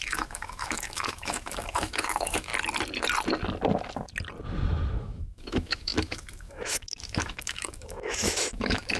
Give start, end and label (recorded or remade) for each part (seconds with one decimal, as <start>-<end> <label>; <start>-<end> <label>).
0.0-2.5 remade; 2.5-5.0 recorded; 5.0-9.0 remade